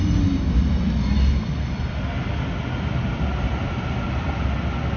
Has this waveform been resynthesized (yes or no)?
no